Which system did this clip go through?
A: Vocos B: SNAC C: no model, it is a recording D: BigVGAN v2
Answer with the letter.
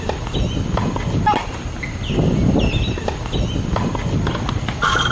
C